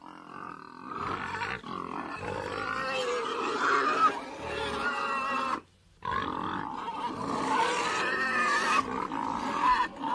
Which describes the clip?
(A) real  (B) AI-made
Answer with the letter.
A